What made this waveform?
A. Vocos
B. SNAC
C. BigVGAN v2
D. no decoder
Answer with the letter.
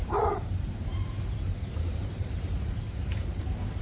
C